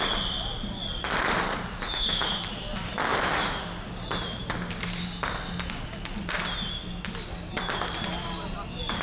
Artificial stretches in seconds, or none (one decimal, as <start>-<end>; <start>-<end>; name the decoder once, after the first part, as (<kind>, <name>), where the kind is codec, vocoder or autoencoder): 1.9-2.5 (autoencoder, DAC-VAE); 3.1-3.6